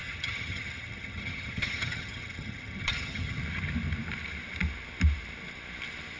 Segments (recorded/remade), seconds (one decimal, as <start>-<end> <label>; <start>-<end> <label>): 0.0-3.4 remade; 3.4-6.2 recorded